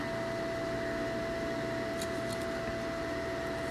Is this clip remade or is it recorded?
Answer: recorded